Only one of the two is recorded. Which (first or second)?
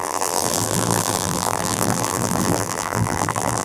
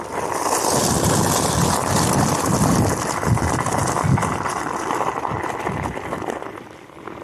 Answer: second